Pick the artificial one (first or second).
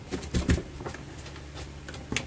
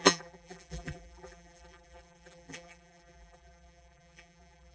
second